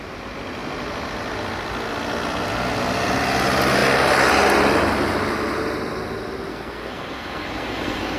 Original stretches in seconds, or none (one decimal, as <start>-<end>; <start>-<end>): 0.0-6.5